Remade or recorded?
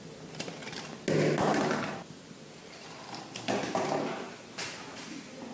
recorded